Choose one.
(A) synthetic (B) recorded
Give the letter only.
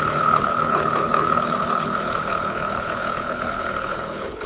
A